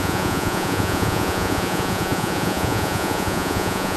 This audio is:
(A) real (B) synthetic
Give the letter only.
B